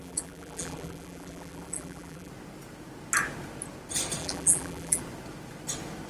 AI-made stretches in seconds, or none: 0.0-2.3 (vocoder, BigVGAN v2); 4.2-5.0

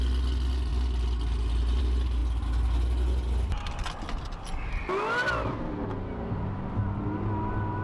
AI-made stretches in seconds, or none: none

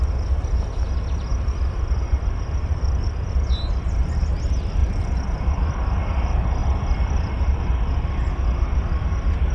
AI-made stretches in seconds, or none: 1.3-4.3 (vocoder, BigVGAN v2); 4.8-6.0; 6.6-7.7

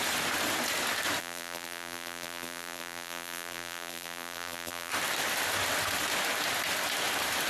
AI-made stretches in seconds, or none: 1.2-4.9 (vocoder, BigVGAN v2)

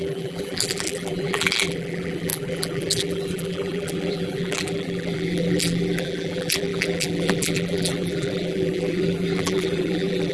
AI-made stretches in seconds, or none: 0.0-10.3 (vocoder, BigVGAN v2)

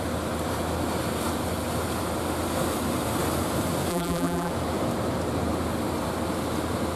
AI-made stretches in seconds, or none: 3.9-4.5 (vocoder, BigVGAN v2)

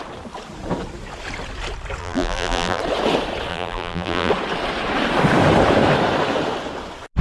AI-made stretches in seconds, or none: 2.0-2.8 (vocoder, BigVGAN v2); 3.5-4.3

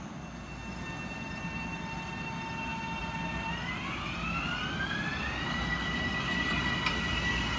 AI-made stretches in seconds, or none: none